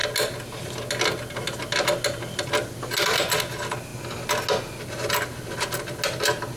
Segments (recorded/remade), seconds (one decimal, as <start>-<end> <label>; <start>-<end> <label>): 0.0-6.6 recorded